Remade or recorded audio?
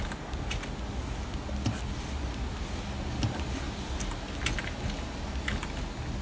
recorded